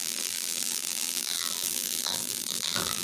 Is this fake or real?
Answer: fake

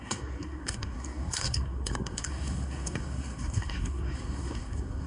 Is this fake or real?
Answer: fake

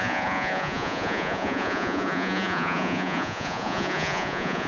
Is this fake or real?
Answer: fake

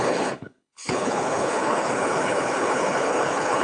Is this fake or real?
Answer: fake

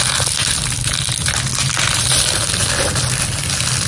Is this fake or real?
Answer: fake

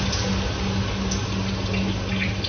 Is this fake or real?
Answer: real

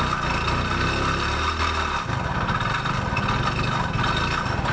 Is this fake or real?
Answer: real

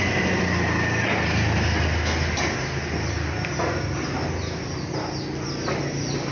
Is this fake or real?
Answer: real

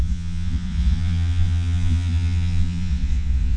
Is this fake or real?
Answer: fake